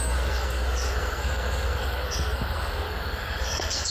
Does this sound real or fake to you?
fake